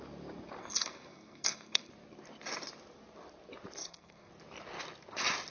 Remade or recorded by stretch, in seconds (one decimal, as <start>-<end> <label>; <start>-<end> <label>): 0.0-0.6 recorded; 0.6-1.9 remade; 1.9-3.8 recorded; 3.8-4.3 remade; 4.3-5.5 recorded